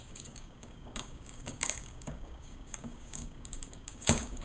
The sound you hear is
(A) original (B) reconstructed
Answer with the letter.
B